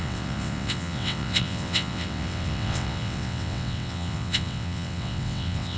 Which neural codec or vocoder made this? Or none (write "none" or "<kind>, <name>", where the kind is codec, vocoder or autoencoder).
vocoder, WaveNeXt